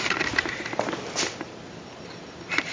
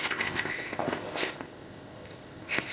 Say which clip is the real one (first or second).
first